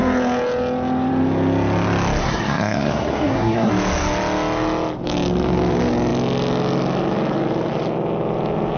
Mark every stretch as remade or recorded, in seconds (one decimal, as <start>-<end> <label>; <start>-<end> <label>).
0.0-2.2 recorded; 2.2-3.7 remade; 3.7-8.8 recorded